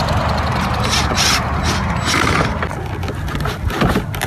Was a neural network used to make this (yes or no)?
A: no